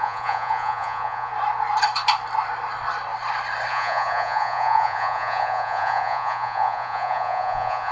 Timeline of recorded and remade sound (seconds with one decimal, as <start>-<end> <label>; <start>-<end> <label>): 0.0-1.3 remade; 1.3-3.7 recorded; 3.7-7.9 remade